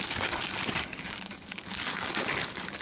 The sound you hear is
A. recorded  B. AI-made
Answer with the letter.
B